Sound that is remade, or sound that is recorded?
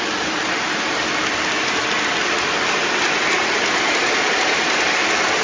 recorded